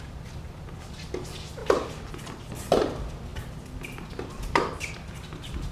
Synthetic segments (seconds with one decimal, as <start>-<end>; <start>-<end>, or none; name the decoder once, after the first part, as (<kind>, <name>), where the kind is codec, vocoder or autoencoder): none